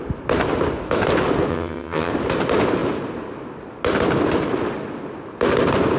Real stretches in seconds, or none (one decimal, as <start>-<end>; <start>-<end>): 0.0-1.5; 2.1-6.0